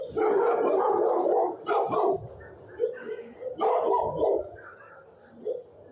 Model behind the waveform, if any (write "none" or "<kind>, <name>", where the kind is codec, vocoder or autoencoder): vocoder, BigVGAN v2